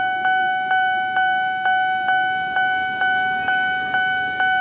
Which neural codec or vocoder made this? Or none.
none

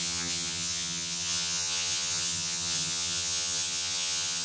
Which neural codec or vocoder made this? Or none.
vocoder, HiFi-GAN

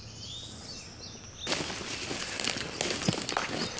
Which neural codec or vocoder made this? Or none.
none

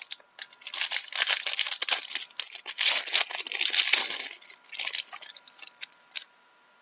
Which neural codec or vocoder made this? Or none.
none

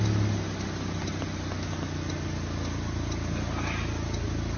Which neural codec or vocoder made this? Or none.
none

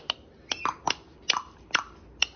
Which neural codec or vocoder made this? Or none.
none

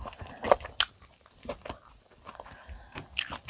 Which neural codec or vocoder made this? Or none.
none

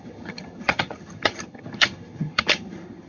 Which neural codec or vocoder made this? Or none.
vocoder, HiFi-GAN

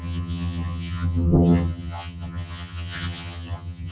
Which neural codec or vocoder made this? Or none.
vocoder, HiFi-GAN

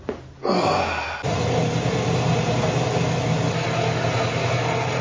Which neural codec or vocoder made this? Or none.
none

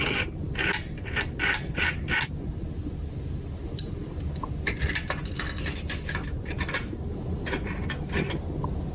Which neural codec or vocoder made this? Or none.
none